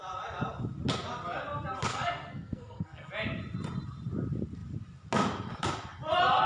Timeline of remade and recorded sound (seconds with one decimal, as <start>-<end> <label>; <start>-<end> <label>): 0.0-1.9 recorded; 1.9-3.1 remade; 3.1-6.5 recorded